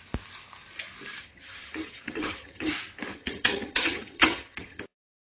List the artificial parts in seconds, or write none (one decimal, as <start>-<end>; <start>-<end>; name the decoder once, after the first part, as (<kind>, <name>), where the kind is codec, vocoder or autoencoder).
1.2-2.7 (vocoder, HiFi-GAN); 3.1-4.8